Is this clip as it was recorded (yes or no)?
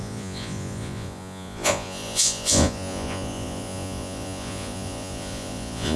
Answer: no